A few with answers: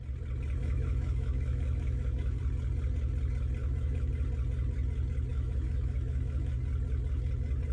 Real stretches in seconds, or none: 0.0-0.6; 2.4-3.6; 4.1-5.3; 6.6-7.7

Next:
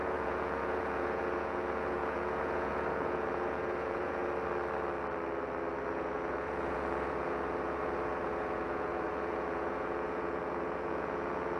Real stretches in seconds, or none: 4.2-5.9

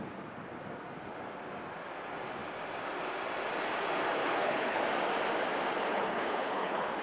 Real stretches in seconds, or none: 0.0-4.2; 4.8-5.9

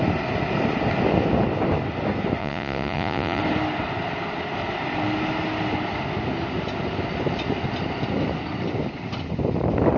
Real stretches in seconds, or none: 0.0-2.4; 3.4-10.0